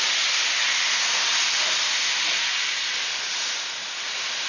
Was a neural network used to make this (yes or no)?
no